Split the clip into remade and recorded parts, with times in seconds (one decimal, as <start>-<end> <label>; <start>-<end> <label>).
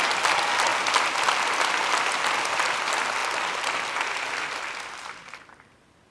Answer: 0.0-6.1 recorded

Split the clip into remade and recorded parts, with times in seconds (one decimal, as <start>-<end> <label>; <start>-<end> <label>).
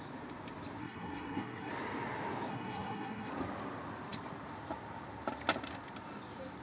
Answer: 0.0-0.8 recorded; 0.8-1.7 remade; 1.7-2.5 recorded; 2.5-3.3 remade; 3.3-6.6 recorded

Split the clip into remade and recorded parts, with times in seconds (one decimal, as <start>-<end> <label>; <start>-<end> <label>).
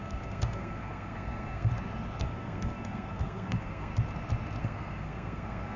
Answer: 0.0-1.7 remade; 1.7-2.2 recorded; 2.2-3.9 remade; 3.9-4.6 recorded; 4.6-5.8 remade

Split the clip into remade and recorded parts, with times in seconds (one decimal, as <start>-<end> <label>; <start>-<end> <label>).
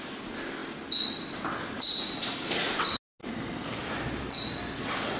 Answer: 0.0-3.2 recorded; 3.2-3.8 remade; 3.8-5.2 recorded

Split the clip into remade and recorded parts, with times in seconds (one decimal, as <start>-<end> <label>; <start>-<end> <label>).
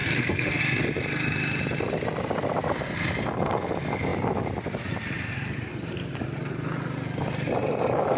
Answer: 0.0-0.6 remade; 0.6-8.2 recorded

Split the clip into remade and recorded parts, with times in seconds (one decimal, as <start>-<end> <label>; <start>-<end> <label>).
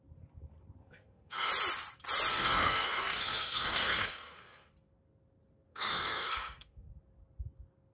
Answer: 0.0-0.8 recorded; 0.8-1.5 remade; 1.5-2.3 recorded; 2.3-4.7 remade; 4.7-5.7 recorded; 5.7-6.9 remade; 6.9-7.9 recorded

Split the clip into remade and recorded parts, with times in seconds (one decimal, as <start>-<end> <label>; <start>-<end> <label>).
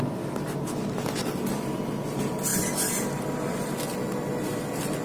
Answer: 0.0-5.0 recorded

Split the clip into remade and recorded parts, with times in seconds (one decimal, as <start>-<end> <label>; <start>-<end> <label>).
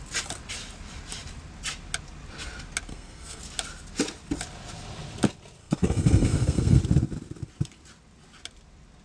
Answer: 0.0-2.9 recorded; 2.9-3.4 remade; 3.4-5.6 recorded; 5.6-6.8 remade; 6.8-9.0 recorded